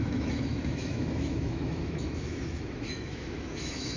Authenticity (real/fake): fake